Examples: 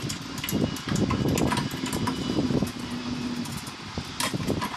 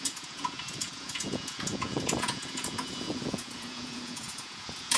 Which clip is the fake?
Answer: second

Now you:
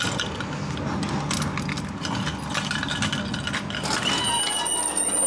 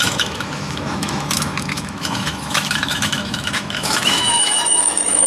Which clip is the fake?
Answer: second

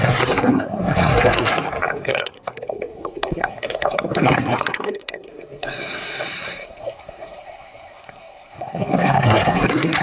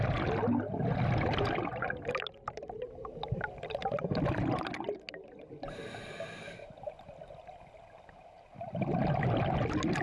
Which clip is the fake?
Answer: first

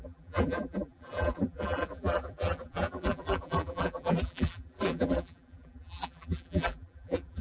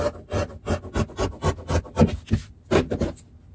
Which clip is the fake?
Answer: first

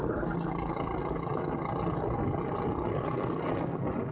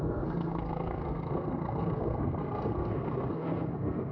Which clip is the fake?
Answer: second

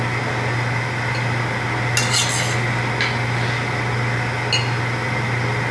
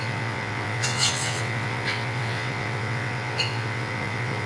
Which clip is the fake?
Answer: second